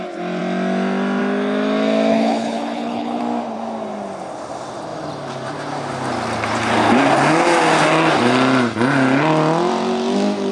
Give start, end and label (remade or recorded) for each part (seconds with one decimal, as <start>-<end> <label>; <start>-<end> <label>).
0.0-2.1 recorded; 2.1-3.2 remade; 3.2-10.5 recorded